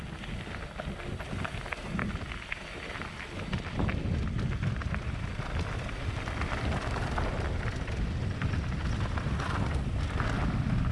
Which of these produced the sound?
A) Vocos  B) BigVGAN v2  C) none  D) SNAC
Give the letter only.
C